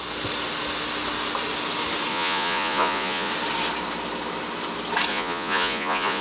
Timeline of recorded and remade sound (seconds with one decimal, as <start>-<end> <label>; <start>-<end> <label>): 0.0-2.1 recorded; 2.1-3.3 remade; 3.3-5.1 recorded; 5.1-6.2 remade